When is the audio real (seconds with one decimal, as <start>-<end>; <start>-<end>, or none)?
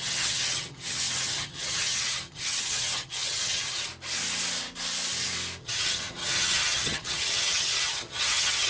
3.9-5.6